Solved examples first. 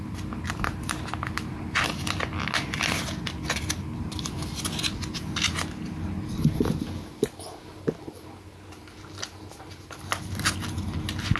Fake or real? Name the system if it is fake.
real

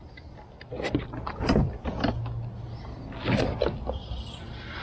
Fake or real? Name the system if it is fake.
real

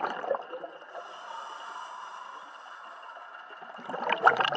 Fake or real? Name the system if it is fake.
real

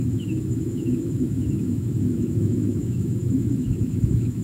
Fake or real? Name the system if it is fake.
fake, autoencoder, DAC-VAE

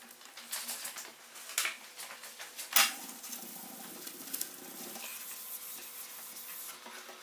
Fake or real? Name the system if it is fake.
real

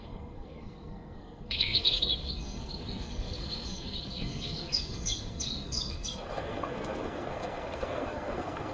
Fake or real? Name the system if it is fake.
fake, codec, SNAC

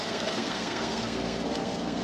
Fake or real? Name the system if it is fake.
fake, codec, SNAC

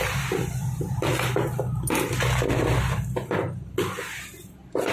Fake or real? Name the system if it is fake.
real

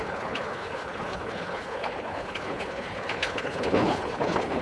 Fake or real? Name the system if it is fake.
fake, codec, HILCodec